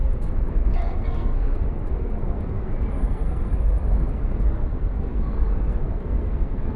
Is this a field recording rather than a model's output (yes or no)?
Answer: no